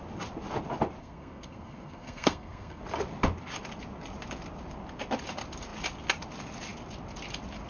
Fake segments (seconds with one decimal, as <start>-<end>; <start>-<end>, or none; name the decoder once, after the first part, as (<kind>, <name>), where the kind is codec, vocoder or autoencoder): 1.0-2.8 (codec, SNAC)